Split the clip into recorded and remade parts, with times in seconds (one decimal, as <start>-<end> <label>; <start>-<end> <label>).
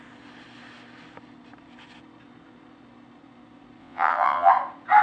0.0-3.8 recorded; 3.8-4.5 remade; 4.5-5.0 recorded